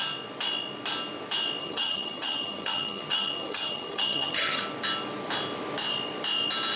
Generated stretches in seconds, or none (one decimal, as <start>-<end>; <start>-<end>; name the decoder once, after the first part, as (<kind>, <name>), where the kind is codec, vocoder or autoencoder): 1.6-4.6 (vocoder, HiFi-GAN)